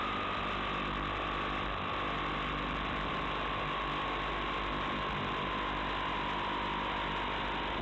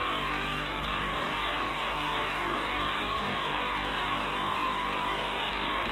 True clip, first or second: first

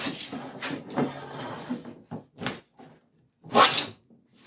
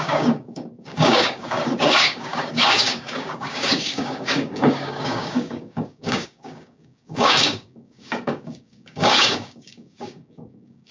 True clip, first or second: first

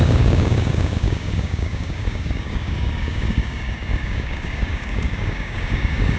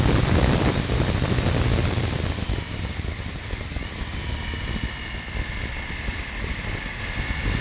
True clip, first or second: second